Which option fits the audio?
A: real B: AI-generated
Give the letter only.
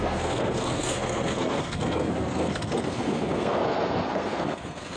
B